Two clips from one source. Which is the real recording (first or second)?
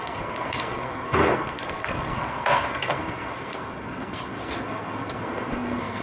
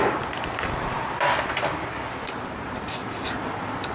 second